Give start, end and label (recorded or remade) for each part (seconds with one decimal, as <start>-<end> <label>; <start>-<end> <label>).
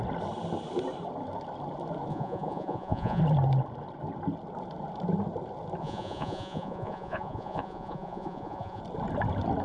0.0-2.1 recorded; 2.1-3.2 remade; 3.2-5.8 recorded; 5.8-8.8 remade; 8.8-9.6 recorded